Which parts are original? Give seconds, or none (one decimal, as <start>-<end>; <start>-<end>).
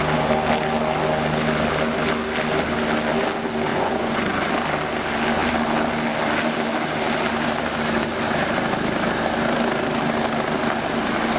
0.0-3.7; 4.5-11.4